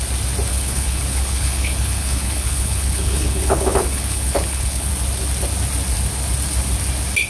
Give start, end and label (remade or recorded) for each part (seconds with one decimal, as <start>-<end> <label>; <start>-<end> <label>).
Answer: 0.0-0.5 recorded; 0.5-4.9 remade; 4.9-7.3 recorded